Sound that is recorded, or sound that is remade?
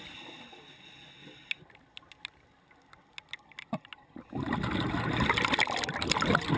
recorded